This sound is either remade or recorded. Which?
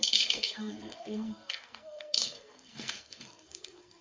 remade